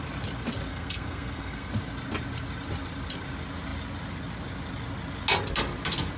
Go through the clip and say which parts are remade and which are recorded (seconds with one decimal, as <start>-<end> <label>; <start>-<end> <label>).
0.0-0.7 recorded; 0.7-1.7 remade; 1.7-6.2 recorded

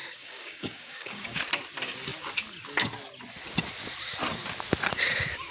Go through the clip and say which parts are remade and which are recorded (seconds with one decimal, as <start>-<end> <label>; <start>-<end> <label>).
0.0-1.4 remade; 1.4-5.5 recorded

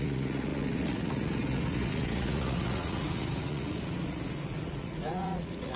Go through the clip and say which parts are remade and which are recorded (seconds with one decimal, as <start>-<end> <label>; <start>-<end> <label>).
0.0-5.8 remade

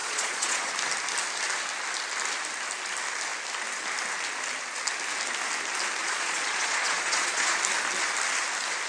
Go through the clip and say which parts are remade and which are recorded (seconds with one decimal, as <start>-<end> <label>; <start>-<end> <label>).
0.0-0.7 remade; 0.7-6.0 recorded; 6.0-7.6 remade; 7.6-8.9 recorded

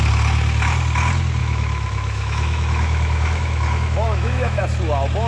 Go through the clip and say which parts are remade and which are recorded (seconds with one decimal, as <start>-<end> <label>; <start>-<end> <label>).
0.0-1.4 recorded; 1.4-4.6 remade; 4.6-5.3 recorded